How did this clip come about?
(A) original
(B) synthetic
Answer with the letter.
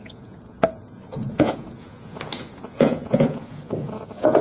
B